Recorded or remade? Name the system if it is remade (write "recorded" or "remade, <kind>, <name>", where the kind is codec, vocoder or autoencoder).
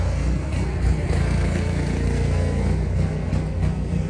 remade, codec, SNAC